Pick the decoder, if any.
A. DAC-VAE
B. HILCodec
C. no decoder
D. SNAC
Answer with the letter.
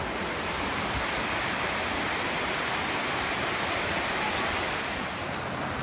C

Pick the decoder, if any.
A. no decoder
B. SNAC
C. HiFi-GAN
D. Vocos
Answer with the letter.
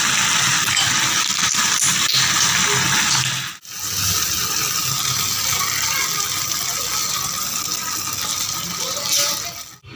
A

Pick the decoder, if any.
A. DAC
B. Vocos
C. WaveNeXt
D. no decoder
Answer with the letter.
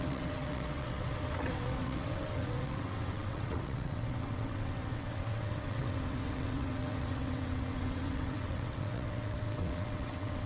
C